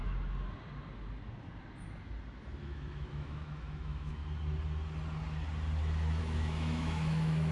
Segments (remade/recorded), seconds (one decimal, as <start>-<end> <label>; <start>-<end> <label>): 0.0-2.6 recorded; 2.6-4.2 remade; 4.2-6.2 recorded; 6.2-7.5 remade